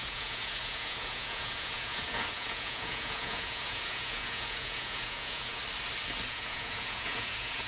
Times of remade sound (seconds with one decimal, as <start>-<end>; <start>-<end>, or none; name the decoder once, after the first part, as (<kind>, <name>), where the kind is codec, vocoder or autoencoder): 0.0-5.6 (vocoder, Vocos); 6.3-7.7